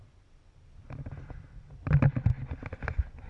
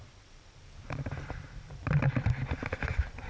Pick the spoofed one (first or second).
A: second